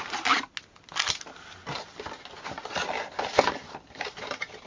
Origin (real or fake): real